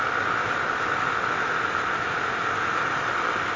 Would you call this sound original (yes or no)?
yes